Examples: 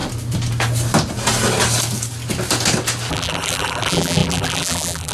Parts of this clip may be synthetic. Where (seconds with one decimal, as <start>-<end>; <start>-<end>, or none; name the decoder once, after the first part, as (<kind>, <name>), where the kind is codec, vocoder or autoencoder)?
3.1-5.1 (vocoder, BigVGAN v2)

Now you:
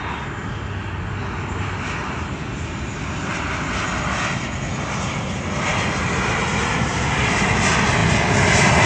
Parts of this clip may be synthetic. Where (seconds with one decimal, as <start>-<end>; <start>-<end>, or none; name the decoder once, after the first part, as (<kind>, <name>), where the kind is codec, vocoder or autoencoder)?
none

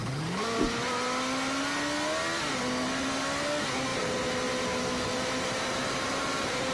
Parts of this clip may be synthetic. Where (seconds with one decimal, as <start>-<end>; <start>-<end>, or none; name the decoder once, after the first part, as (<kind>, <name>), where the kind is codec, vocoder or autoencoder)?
3.9-6.7 (vocoder, BigVGAN v2)

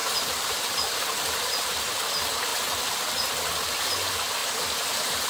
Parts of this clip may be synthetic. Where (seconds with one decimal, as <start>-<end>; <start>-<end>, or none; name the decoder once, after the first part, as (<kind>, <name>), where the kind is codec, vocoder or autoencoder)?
0.0-1.9 (vocoder, BigVGAN v2); 4.4-5.3

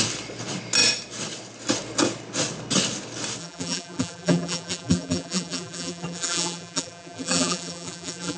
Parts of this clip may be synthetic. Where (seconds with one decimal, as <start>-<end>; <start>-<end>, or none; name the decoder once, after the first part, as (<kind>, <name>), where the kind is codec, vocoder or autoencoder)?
3.4-8.4 (vocoder, BigVGAN v2)